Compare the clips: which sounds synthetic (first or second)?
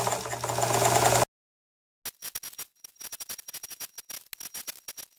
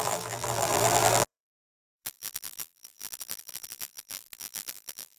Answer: second